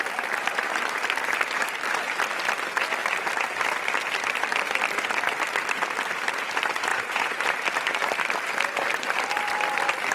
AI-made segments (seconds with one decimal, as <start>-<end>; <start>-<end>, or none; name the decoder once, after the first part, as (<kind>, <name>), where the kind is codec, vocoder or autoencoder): 6.9-7.4 (vocoder, Vocos)

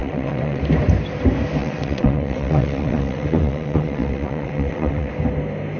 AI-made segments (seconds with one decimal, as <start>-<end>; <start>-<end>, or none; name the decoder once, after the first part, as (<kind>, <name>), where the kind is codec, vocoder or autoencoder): 0.0-0.6 (vocoder, WaveNeXt); 1.6-5.1

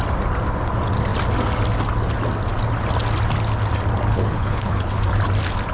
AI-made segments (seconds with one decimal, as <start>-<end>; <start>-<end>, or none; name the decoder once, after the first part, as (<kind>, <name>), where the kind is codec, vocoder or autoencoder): 4.1-4.9 (codec, HILCodec)

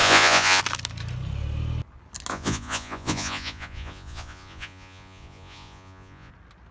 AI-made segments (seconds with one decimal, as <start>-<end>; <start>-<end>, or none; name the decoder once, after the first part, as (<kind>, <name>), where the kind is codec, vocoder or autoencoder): 0.0-0.6 (vocoder, Vocos); 2.3-6.3

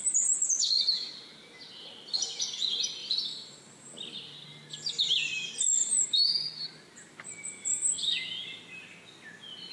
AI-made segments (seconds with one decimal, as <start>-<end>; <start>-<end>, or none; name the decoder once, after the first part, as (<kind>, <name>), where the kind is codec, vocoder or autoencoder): 3.0-3.6 (vocoder, BigVGAN v2)

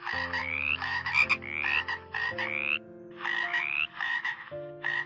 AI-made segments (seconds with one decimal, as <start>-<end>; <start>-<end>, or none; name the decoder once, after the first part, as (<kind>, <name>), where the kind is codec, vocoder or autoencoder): 0.4-1.1 (autoencoder, DAC-VAE); 3.3-5.1

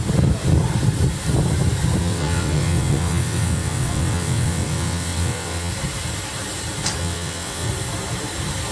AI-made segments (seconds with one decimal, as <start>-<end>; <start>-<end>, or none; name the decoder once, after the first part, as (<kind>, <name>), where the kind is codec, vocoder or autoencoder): 2.0-5.7 (vocoder, WaveNeXt); 7.0-7.7

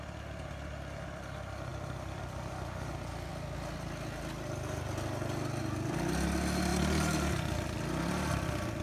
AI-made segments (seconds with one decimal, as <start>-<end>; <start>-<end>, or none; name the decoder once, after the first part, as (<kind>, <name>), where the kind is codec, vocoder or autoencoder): none